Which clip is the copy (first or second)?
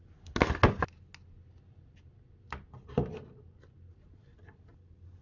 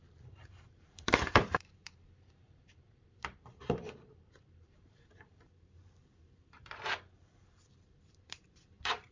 second